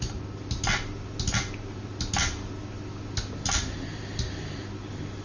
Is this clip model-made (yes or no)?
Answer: no